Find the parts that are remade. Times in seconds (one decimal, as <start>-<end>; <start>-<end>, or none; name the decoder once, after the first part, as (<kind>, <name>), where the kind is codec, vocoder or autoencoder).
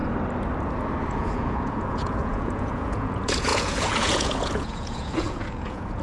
1.1-6.0 (vocoder, Vocos)